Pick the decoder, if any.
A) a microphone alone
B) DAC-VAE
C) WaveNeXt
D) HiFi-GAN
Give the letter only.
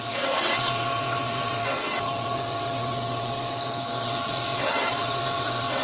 C